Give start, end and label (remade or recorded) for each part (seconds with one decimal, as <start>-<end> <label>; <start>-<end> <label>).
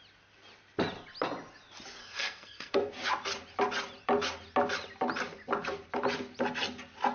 0.0-2.0 recorded; 2.0-2.9 remade; 2.9-7.1 recorded